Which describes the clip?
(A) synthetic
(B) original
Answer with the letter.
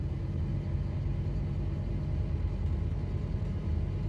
B